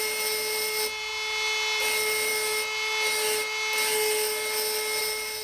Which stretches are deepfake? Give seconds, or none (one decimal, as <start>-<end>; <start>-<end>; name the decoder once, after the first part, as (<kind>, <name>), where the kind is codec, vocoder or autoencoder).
0.0-1.1 (vocoder, BigVGAN v2); 1.8-2.3; 5.0-5.4